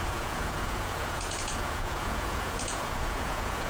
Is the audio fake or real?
fake